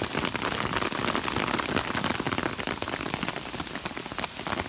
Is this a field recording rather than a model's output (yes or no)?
yes